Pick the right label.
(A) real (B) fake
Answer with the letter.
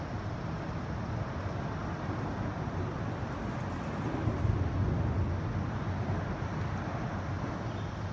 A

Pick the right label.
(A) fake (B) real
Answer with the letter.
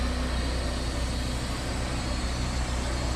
B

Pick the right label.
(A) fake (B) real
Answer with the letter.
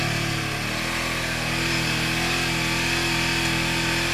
B